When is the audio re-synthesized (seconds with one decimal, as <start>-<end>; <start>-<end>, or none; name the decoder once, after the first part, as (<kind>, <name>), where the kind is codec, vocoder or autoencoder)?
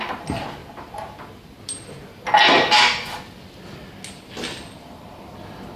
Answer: none